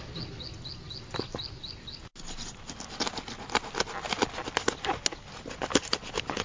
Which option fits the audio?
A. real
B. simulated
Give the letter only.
A